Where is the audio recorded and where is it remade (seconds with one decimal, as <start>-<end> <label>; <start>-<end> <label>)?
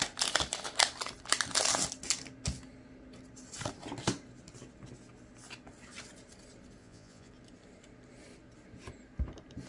0.0-6.8 recorded; 6.8-7.3 remade; 7.3-9.7 recorded